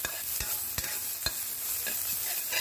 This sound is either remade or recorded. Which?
recorded